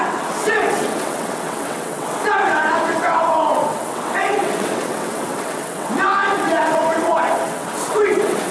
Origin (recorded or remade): remade